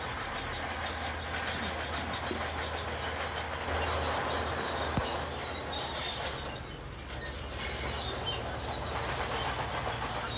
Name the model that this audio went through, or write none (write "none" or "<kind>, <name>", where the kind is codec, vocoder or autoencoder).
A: none